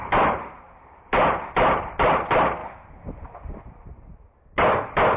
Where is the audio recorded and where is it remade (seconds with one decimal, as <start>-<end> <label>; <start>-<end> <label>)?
0.0-0.6 recorded; 0.6-2.6 remade; 2.6-5.2 recorded